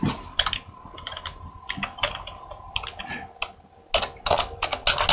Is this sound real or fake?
real